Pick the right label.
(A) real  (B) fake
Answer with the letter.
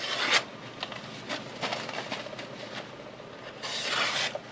A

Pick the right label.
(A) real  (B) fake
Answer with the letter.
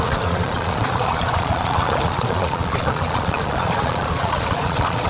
B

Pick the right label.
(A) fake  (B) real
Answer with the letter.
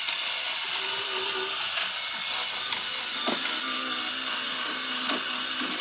B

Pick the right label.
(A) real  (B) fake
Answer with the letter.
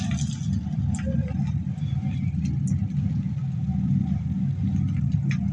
A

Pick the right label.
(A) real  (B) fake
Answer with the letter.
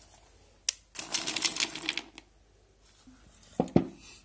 A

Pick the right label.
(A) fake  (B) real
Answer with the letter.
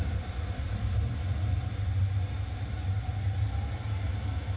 B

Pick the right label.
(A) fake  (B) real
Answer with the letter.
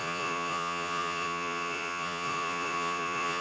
A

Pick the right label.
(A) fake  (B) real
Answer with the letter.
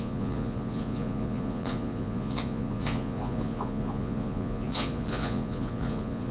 A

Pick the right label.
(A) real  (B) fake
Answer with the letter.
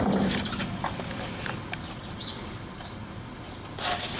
A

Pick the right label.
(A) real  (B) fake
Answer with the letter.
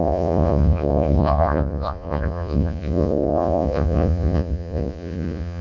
B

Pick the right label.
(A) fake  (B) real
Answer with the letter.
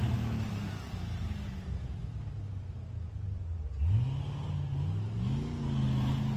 B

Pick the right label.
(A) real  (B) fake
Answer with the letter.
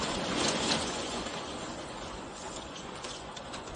B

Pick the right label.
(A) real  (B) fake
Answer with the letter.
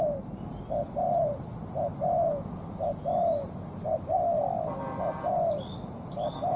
A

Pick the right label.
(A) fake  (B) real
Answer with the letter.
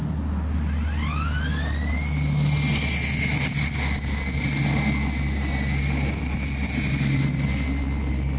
B